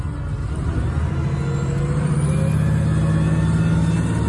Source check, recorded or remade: recorded